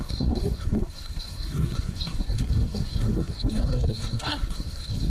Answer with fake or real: fake